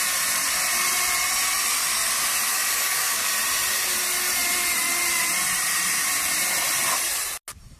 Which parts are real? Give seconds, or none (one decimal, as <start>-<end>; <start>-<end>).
0.0-2.5; 3.3-7.8